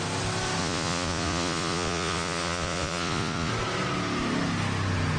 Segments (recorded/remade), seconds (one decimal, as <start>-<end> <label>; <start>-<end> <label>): 0.0-0.6 recorded; 0.6-3.5 remade; 3.5-5.2 recorded